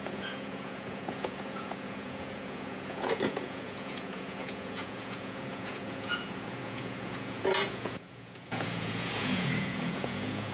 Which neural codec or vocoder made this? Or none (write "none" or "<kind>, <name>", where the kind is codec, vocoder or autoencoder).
vocoder, Vocos